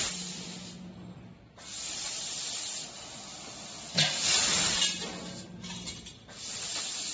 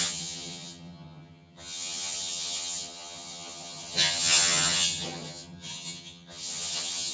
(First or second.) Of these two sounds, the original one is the first